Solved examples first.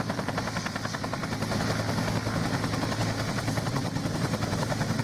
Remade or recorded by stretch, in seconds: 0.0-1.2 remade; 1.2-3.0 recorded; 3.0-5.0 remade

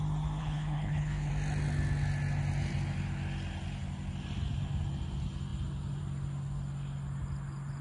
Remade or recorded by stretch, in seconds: 0.0-0.4 recorded; 0.4-1.3 remade; 1.3-7.8 recorded

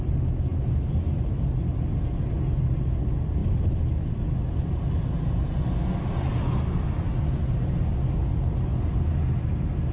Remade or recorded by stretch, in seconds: 0.0-9.9 recorded

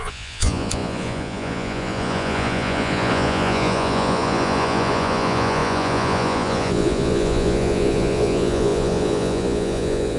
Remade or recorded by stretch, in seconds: 0.0-10.2 remade

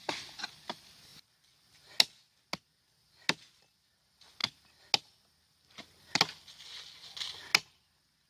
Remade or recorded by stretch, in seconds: 0.0-8.3 recorded

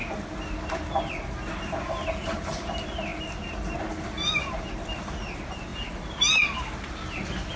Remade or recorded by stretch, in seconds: 0.0-7.6 recorded